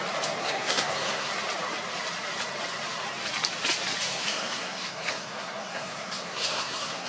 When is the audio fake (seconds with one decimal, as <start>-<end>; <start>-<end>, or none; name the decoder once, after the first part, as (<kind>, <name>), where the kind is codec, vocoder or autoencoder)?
0.4-1.3 (codec, SNAC); 4.1-7.1